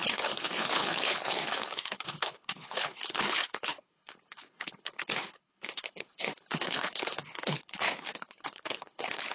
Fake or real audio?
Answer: fake